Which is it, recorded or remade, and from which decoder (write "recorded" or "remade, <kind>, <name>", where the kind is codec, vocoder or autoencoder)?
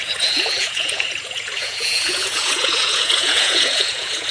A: remade, vocoder, Vocos